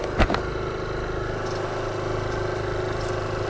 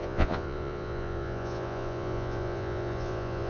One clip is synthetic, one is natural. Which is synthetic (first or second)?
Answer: second